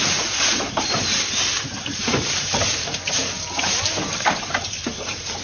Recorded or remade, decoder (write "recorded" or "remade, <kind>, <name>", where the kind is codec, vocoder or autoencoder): remade, vocoder, BigVGAN v2